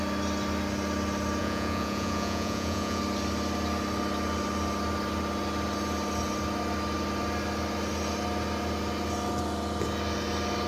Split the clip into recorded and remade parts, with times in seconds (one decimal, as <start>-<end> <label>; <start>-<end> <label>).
0.0-1.4 recorded; 1.4-3.0 remade; 3.0-10.7 recorded